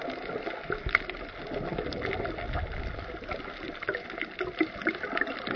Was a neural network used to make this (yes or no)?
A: no